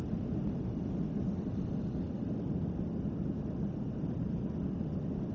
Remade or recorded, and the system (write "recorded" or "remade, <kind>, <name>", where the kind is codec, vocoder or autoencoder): recorded